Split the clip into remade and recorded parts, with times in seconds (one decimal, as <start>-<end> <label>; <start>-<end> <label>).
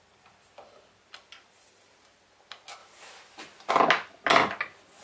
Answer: 0.0-5.0 recorded